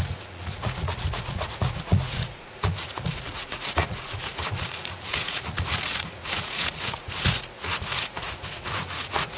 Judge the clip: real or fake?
fake